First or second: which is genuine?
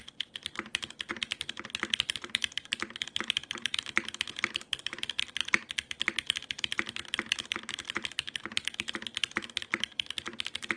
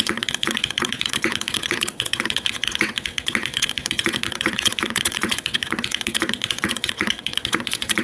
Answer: first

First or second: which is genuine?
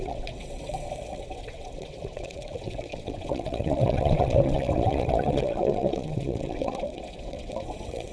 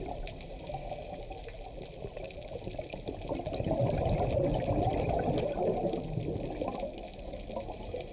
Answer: second